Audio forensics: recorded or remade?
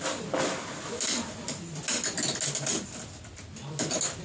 recorded